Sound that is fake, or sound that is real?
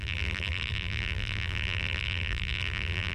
fake